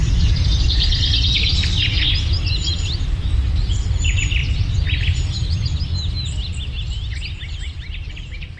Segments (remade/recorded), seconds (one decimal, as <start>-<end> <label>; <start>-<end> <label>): 0.0-0.9 remade; 0.9-2.1 recorded; 2.1-4.4 remade; 4.4-8.1 recorded; 8.1-8.6 remade